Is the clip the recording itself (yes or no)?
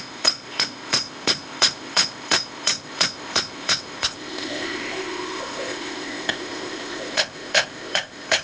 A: no